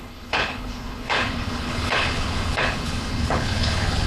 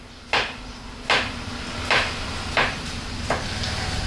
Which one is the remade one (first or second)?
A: first